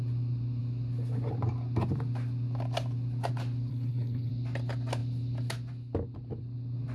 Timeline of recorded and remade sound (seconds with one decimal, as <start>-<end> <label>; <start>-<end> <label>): 0.0-3.7 recorded; 3.7-4.3 remade; 4.3-6.9 recorded